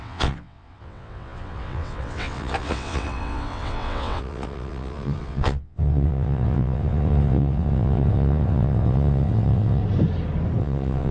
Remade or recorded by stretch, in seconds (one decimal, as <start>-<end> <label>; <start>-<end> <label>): 0.0-9.8 remade; 9.8-10.6 recorded; 10.6-11.1 remade